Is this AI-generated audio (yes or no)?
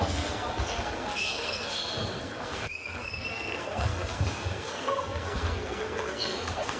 yes